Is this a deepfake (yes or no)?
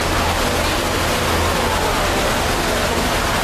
no